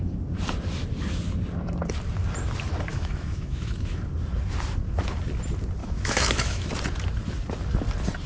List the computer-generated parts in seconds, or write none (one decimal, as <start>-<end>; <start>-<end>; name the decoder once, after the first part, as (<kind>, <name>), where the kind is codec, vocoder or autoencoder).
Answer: 2.9-4.0 (autoencoder, DAC-VAE); 5.8-6.7